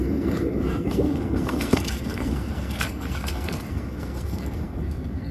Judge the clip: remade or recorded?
remade